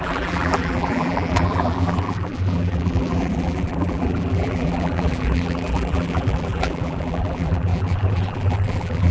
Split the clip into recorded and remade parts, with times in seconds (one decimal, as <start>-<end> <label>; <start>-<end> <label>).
0.0-9.1 remade